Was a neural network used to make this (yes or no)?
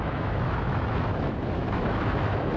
yes